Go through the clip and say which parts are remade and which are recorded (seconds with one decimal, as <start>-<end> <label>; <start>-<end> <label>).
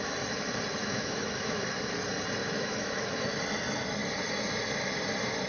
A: 0.0-0.8 recorded; 0.8-1.6 remade; 1.6-2.4 recorded; 2.4-3.3 remade; 3.3-5.5 recorded